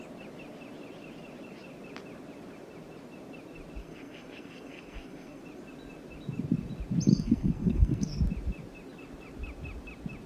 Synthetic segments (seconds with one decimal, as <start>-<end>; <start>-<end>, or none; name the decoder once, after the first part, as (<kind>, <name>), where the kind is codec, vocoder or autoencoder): 3.8-5.4 (codec, SNAC); 7.1-8.2